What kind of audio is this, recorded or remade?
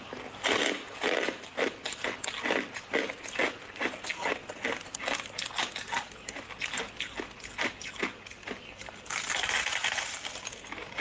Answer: recorded